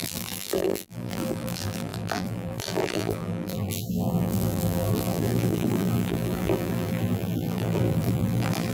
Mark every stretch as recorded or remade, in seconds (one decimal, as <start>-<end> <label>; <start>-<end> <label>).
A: 0.0-8.7 remade